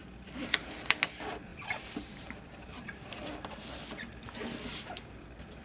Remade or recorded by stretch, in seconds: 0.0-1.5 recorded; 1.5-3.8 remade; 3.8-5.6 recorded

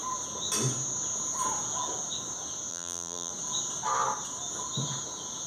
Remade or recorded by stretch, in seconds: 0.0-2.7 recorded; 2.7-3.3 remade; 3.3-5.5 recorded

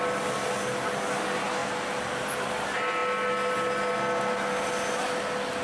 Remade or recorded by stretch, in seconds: 0.0-5.6 recorded